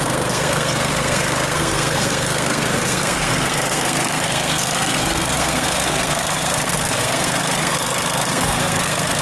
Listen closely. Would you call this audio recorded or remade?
remade